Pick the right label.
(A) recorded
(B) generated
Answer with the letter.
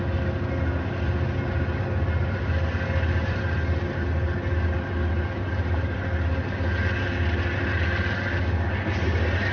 A